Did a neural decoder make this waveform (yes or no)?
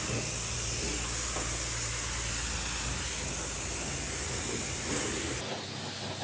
no